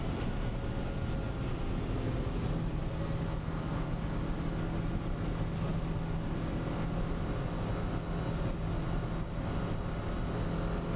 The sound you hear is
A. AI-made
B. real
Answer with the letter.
B